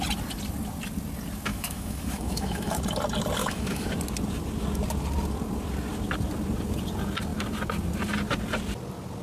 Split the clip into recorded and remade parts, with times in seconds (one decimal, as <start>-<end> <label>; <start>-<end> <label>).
0.0-1.5 recorded; 1.5-2.8 remade; 2.8-3.4 recorded; 3.4-3.9 remade; 3.9-9.2 recorded

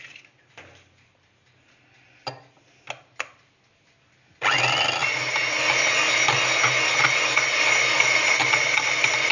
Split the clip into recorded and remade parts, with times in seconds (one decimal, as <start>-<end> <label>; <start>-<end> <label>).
0.0-9.3 recorded

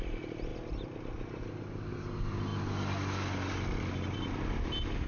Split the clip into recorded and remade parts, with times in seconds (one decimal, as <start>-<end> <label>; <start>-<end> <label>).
0.0-5.1 recorded

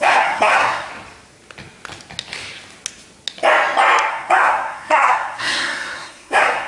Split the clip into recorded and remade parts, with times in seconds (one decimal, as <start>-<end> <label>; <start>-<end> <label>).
0.0-0.9 remade; 0.9-4.1 recorded; 4.1-6.7 remade

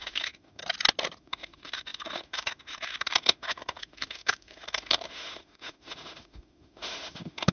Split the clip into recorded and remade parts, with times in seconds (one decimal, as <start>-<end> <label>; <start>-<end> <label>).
0.0-0.6 remade; 0.6-1.2 recorded; 1.2-7.5 remade

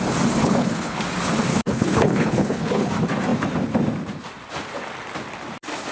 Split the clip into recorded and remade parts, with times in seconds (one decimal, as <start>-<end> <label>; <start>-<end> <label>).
0.0-0.4 recorded; 0.4-1.0 remade; 1.0-1.5 recorded; 1.5-2.9 remade; 2.9-5.9 recorded

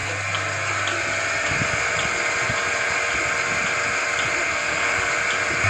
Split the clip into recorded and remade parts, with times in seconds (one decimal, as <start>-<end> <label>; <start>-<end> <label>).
0.0-4.4 recorded; 4.4-5.1 remade; 5.1-5.7 recorded

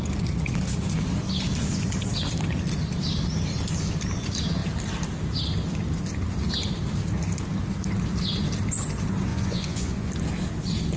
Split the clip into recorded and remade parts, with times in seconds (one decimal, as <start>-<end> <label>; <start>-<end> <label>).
0.0-9.3 recorded; 9.3-10.1 remade; 10.1-11.0 recorded